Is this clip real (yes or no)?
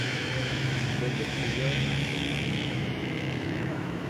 no